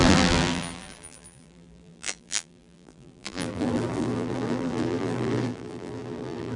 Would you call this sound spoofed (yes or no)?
yes